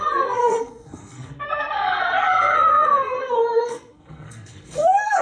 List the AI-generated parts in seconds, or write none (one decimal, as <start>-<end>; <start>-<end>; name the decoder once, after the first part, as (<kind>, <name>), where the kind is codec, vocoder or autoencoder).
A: 0.0-5.2 (codec, SNAC)